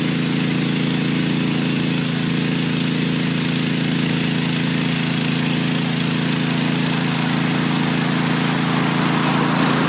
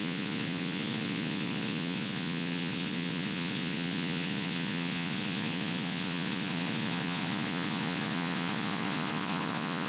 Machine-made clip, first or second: second